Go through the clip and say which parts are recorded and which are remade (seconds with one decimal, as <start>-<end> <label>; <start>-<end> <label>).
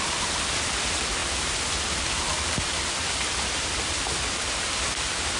0.0-1.2 remade; 1.2-1.7 recorded; 1.7-5.4 remade